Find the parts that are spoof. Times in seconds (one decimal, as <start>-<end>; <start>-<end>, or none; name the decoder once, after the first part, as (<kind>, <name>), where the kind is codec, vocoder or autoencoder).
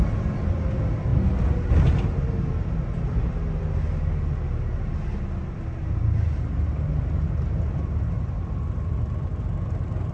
none